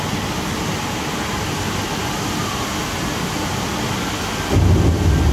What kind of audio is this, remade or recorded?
recorded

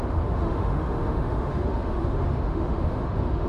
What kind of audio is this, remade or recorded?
remade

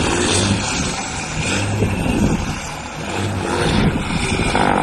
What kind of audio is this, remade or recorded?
recorded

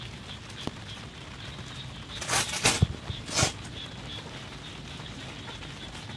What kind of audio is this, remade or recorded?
recorded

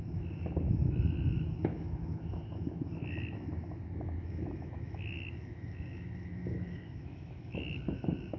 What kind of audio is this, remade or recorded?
remade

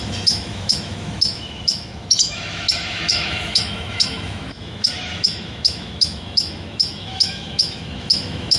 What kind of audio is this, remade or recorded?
remade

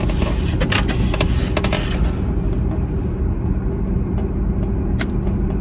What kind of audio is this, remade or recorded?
recorded